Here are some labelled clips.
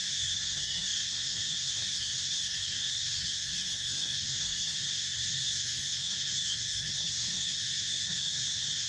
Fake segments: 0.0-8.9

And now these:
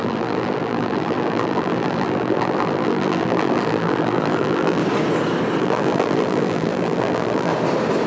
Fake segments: 0.0-4.8; 5.6-7.5

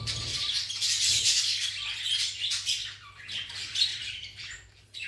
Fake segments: 1.1-1.7

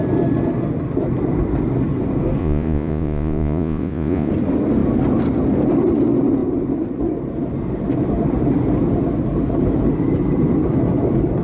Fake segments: 2.4-4.3

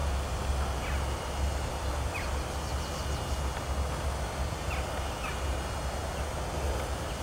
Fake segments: none

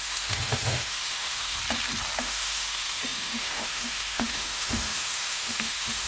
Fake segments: 0.0-1.6; 2.2-6.1

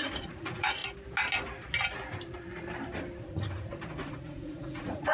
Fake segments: 0.0-0.8; 3.2-5.1

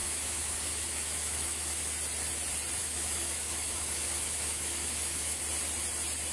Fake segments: 0.0-1.9; 2.8-5.4